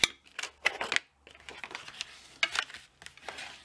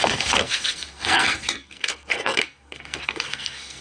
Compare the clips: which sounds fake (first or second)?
second